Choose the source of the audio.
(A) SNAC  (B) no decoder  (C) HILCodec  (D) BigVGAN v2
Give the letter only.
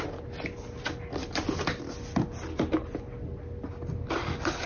B